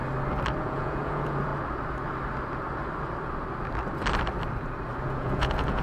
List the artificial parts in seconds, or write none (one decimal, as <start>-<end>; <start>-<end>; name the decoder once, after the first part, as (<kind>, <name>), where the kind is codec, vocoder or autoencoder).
0.6-1.5 (vocoder, Vocos); 5.0-5.8